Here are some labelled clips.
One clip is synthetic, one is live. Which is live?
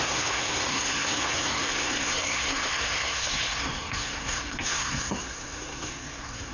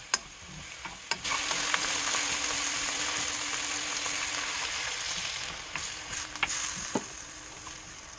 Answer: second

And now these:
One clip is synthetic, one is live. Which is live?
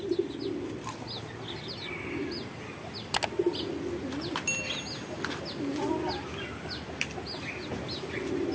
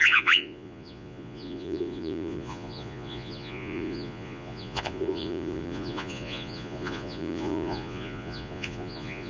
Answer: first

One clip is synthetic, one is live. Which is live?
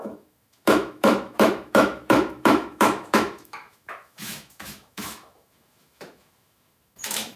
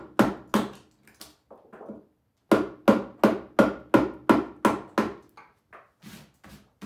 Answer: second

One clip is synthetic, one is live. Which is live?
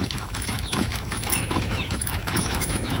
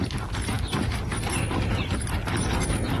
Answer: second